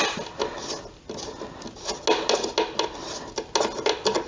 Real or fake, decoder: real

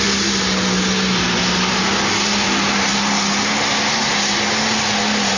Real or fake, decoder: real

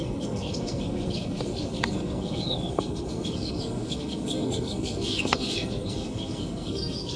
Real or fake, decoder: fake, codec, SNAC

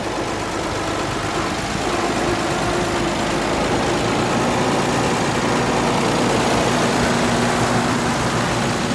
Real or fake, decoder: real